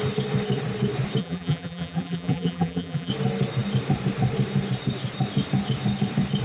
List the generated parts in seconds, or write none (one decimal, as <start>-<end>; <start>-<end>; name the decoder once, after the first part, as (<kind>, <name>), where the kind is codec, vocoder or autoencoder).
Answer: 1.2-3.1 (vocoder, BigVGAN v2)